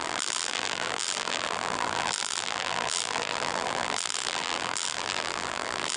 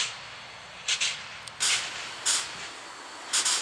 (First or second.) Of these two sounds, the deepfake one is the first